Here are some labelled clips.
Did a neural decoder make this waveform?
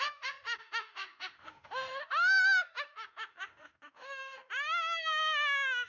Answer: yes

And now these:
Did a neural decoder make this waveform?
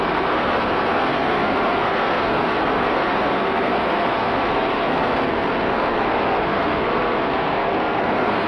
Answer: yes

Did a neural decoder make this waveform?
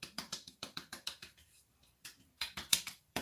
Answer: yes